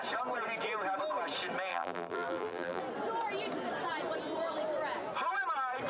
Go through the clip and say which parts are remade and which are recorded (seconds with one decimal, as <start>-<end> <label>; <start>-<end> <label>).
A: 0.0-1.7 recorded; 1.7-2.8 remade; 2.8-5.9 recorded